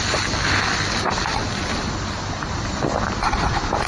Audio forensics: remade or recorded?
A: recorded